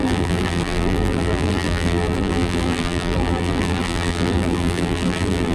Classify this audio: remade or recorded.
remade